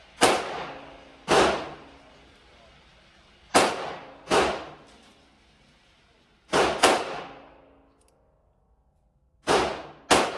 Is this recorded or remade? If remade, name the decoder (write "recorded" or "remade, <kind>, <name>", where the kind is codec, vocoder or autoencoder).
recorded